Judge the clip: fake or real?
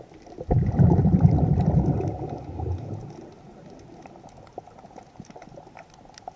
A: real